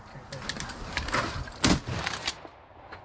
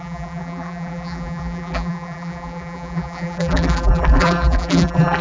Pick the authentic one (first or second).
first